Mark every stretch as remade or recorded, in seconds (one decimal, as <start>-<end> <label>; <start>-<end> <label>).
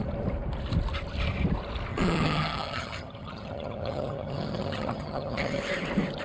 0.0-1.9 recorded; 1.9-5.6 remade; 5.6-6.2 recorded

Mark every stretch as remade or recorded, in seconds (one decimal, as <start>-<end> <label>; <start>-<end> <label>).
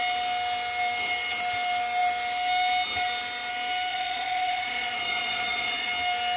0.0-3.9 recorded; 3.9-5.9 remade; 5.9-6.4 recorded